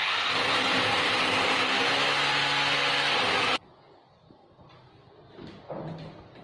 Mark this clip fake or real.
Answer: real